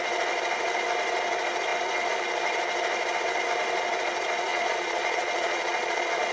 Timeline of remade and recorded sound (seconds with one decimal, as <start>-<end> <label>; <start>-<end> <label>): 0.0-4.5 recorded; 4.5-6.3 remade